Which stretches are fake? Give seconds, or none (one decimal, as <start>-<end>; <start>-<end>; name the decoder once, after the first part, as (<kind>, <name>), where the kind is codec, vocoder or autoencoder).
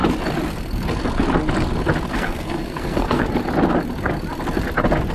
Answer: 2.1-3.3 (codec, SNAC)